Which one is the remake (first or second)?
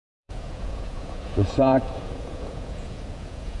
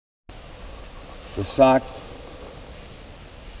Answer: first